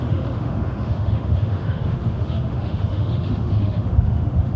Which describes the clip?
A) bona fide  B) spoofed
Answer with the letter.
B